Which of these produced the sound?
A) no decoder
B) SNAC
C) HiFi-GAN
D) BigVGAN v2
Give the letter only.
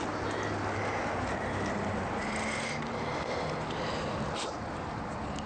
A